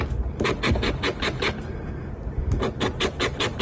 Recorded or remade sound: recorded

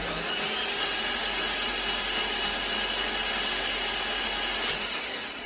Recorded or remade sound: recorded